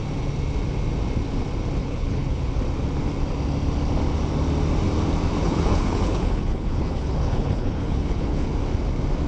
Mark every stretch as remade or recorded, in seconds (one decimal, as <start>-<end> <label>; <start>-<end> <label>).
0.0-1.8 recorded; 1.8-2.5 remade; 2.5-5.4 recorded; 5.4-8.5 remade; 8.5-9.3 recorded